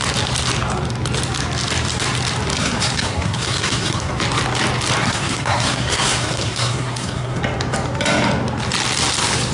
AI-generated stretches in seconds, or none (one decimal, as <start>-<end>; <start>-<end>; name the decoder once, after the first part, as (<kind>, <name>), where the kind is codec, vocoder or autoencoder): 2.6-4.1 (codec, SNAC); 5.0-7.4